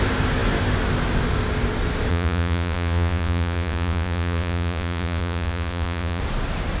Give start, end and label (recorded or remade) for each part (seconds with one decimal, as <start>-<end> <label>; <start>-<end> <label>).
0.0-2.1 recorded; 2.1-6.2 remade; 6.2-6.8 recorded